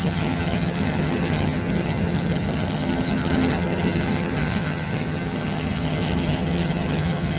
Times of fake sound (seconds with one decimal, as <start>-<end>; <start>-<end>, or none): 0.0-7.4